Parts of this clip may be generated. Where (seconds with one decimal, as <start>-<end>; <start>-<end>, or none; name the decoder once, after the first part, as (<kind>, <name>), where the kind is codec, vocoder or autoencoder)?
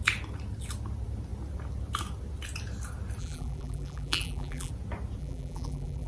3.2-4.7 (vocoder, BigVGAN v2); 5.2-6.1